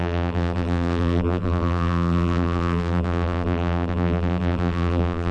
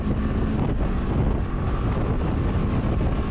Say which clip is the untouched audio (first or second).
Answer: second